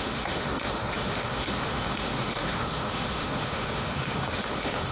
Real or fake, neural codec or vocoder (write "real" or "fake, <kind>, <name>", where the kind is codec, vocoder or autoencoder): fake, autoencoder, DAC-VAE